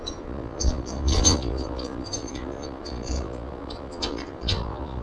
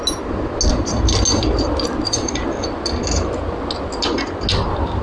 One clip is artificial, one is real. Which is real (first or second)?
second